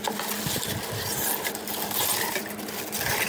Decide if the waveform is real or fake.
real